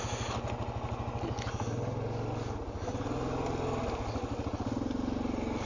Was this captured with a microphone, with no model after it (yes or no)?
yes